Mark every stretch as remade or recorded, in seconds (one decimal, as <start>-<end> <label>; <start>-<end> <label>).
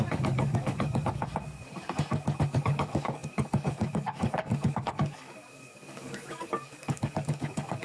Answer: 0.0-1.3 remade; 1.3-2.5 recorded; 2.5-7.8 remade